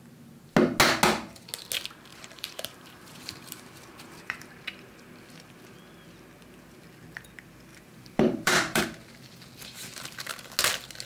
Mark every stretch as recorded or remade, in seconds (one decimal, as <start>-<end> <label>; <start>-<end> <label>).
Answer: 0.0-2.1 recorded; 2.1-4.5 remade; 4.5-7.7 recorded; 7.7-8.8 remade; 8.8-11.1 recorded